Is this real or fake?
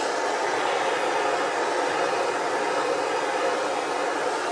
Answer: real